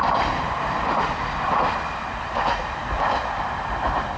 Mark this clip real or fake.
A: fake